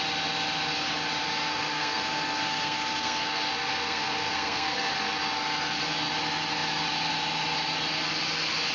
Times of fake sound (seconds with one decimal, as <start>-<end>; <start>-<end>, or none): 1.5-4.9